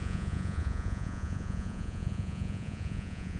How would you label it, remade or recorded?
remade